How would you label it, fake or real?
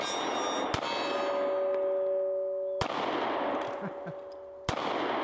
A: real